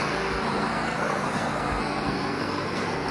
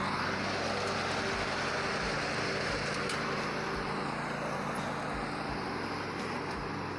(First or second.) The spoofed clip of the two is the first